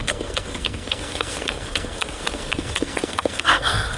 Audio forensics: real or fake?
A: fake